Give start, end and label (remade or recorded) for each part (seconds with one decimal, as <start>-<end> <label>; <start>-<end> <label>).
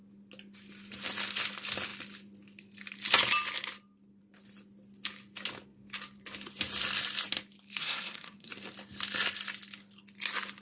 0.0-7.8 recorded; 7.8-8.5 remade; 8.5-10.6 recorded